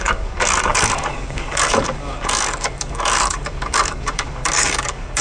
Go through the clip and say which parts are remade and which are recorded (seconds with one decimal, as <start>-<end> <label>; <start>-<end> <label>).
0.0-5.2 remade